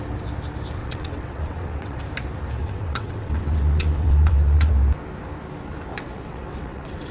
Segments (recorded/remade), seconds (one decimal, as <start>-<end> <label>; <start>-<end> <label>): 0.0-0.8 recorded; 0.8-2.0 remade; 2.0-2.6 recorded; 2.6-4.7 remade; 4.7-5.9 recorded; 5.9-7.1 remade